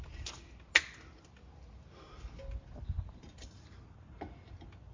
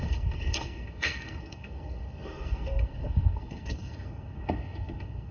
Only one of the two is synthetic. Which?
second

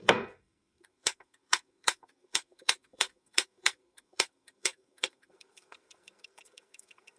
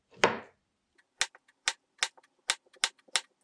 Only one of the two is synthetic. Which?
first